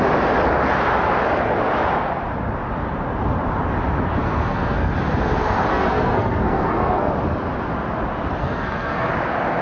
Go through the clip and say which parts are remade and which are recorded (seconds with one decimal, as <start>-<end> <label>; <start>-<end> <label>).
0.0-4.2 recorded; 4.2-4.9 remade; 4.9-5.7 recorded; 5.7-7.1 remade; 7.1-8.4 recorded; 8.4-9.1 remade; 9.1-9.6 recorded